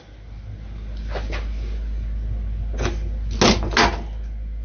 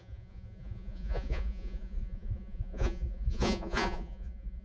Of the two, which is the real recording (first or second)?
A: first